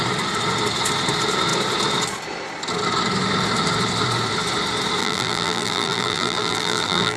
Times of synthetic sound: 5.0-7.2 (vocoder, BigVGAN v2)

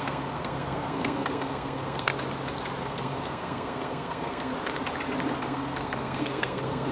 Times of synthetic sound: 0.0-2.1 (codec, SNAC); 2.8-4.5; 5.4-6.9